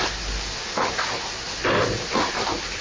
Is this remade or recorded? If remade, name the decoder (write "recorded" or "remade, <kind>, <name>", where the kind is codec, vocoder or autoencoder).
recorded